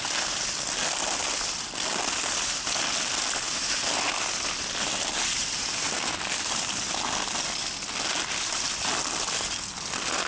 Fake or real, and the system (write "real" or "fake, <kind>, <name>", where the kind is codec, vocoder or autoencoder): real